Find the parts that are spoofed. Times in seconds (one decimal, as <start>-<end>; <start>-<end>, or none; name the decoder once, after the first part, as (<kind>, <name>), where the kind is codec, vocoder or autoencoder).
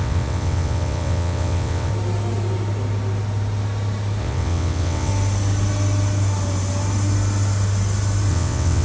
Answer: 0.0-1.9 (vocoder, WaveNeXt); 4.2-5.1; 8.3-8.8